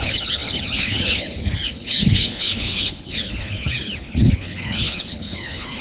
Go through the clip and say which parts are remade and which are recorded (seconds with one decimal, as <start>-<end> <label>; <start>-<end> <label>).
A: 0.0-5.8 remade